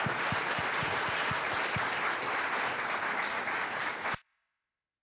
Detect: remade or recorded recorded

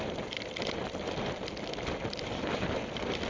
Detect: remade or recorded remade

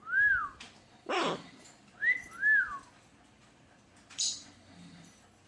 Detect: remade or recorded remade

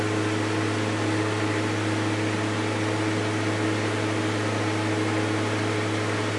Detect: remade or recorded recorded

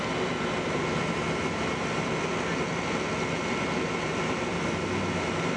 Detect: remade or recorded recorded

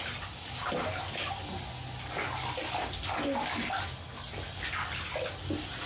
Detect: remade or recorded recorded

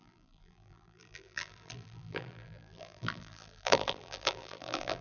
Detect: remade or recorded remade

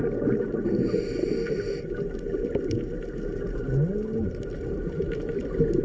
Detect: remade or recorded recorded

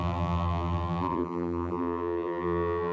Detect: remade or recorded remade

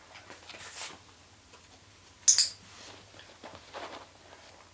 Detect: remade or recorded recorded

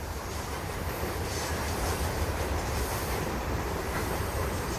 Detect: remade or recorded remade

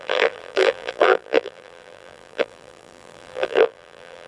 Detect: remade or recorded remade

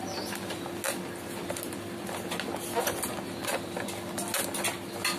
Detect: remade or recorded recorded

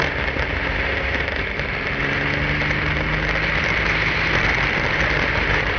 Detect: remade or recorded recorded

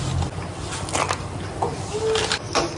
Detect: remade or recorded recorded